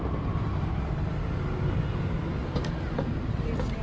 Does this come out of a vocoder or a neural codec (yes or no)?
no